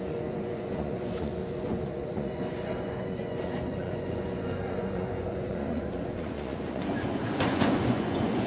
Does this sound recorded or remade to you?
remade